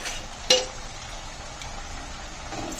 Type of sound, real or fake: fake